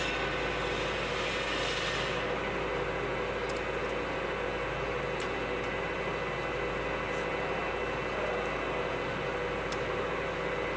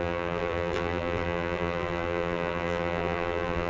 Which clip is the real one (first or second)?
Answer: first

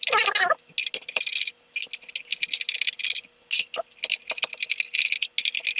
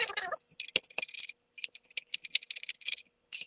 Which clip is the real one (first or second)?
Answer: first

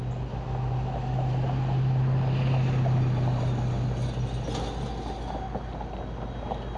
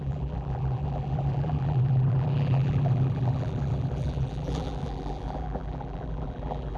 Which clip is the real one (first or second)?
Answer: first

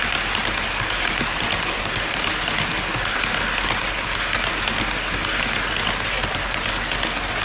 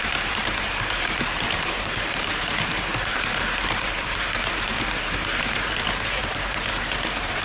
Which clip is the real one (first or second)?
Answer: first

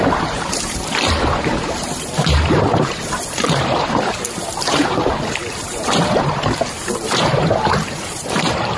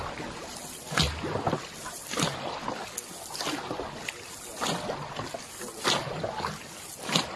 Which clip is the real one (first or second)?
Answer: second